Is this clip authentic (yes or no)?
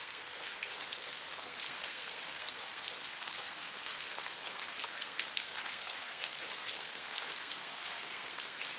no